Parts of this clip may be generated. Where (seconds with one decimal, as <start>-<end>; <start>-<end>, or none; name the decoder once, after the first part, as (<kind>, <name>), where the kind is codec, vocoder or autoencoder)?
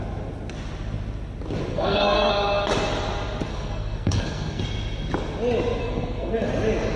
1.7-2.3 (codec, SNAC); 3.5-4.6; 5.8-6.5